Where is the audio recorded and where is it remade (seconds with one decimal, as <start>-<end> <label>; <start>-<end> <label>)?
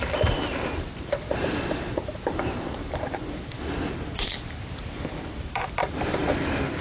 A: 0.0-6.2 remade; 6.2-6.8 recorded